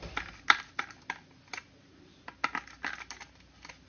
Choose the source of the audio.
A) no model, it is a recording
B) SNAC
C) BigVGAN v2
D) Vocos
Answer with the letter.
A